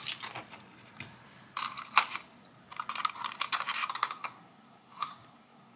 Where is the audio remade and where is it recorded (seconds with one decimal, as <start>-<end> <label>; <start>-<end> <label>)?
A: 0.0-4.0 recorded; 4.0-5.8 remade